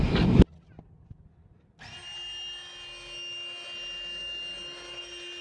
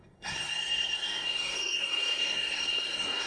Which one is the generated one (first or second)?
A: second